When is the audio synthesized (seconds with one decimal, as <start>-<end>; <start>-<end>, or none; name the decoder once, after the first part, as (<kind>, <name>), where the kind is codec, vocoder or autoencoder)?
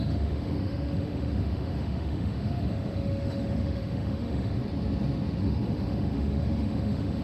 0.0-4.6 (autoencoder, DAC-VAE); 5.4-7.2